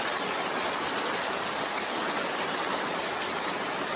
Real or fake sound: real